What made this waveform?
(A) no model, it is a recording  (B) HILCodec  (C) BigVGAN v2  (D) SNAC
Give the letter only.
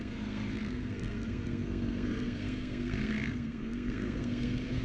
D